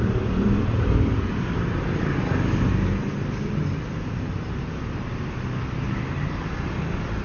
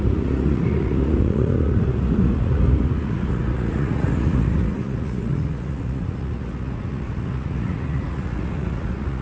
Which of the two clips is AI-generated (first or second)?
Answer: second